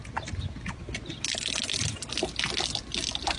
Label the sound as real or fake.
real